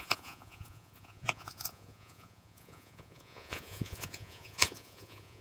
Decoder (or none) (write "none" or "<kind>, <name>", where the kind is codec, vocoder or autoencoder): vocoder, Vocos